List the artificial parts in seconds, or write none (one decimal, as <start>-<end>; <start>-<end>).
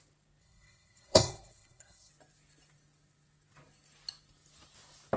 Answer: 0.4-2.1